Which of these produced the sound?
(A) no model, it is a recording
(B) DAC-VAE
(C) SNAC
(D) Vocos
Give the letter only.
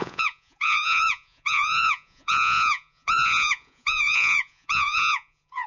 D